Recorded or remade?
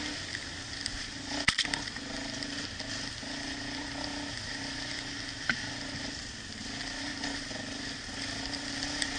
recorded